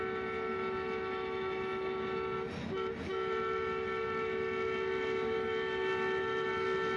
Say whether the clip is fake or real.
real